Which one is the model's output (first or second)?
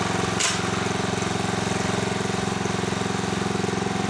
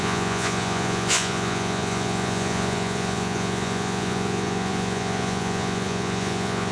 second